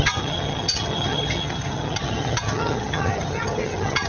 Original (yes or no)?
no